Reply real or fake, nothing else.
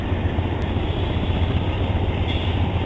real